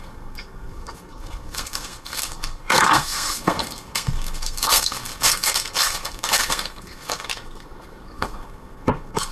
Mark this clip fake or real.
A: fake